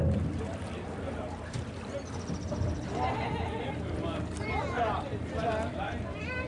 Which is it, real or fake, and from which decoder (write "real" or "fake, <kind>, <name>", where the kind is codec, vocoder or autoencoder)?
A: real